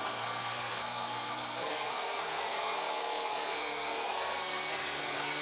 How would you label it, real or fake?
fake